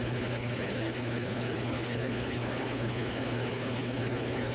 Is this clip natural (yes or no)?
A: no